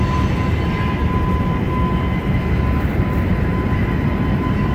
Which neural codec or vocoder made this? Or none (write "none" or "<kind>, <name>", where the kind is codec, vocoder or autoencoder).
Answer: none